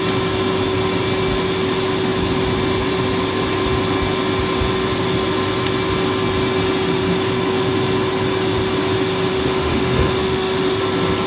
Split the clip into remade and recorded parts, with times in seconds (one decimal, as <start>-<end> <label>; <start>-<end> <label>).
0.0-9.3 recorded; 9.3-10.8 remade; 10.8-11.3 recorded